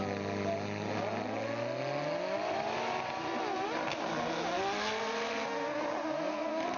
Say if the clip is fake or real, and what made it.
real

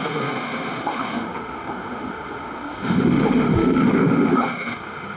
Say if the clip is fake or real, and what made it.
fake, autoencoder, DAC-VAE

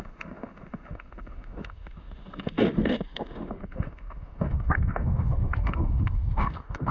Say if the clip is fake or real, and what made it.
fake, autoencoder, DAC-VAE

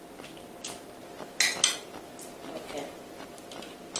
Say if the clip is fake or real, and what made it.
real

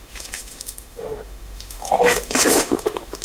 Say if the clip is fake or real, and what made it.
fake, autoencoder, DAC-VAE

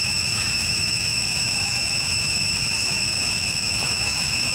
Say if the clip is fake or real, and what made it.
fake, autoencoder, DAC-VAE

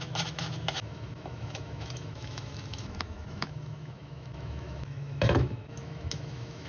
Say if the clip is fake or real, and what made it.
fake, autoencoder, DAC-VAE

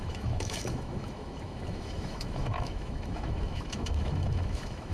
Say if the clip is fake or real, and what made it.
fake, autoencoder, DAC-VAE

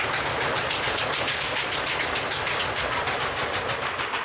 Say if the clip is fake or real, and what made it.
real